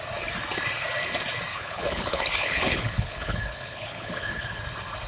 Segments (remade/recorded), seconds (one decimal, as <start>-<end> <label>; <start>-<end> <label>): 0.0-1.5 recorded; 1.5-4.6 remade; 4.6-5.1 recorded